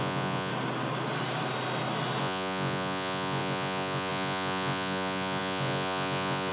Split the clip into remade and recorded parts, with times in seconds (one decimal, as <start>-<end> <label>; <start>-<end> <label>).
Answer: 0.0-0.5 remade; 0.5-2.2 recorded; 2.2-6.5 remade